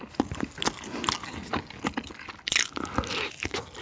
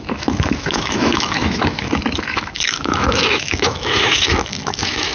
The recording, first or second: first